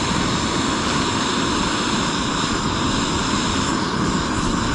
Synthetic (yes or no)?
no